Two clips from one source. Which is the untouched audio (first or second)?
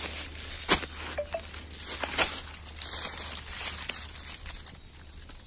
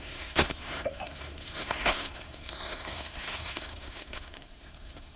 first